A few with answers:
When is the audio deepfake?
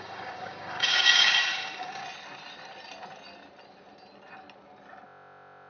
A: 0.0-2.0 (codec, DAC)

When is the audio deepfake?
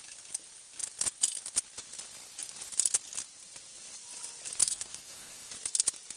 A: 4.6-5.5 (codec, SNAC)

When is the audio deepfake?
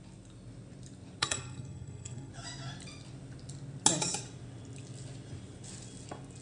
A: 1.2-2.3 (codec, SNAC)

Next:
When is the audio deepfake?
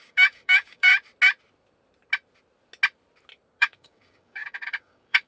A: 0.0-0.9 (codec, DAC); 3.6-5.3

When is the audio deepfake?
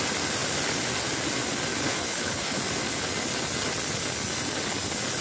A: 1.8-2.6 (codec, HILCodec)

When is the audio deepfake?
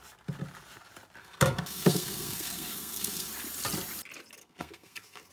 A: 1.2-3.3 (codec, SNAC); 4.4-5.3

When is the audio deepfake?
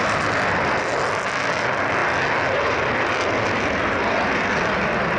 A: none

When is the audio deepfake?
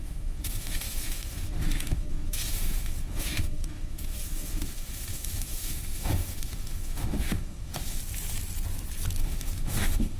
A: 0.0-8.0 (autoencoder, DAC-VAE); 9.2-10.2